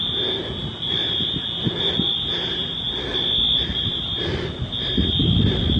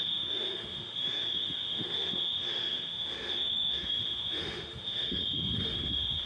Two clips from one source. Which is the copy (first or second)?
second